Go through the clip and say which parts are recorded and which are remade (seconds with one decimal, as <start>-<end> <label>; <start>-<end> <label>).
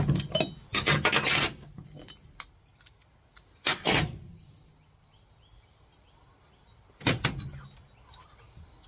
0.0-8.9 recorded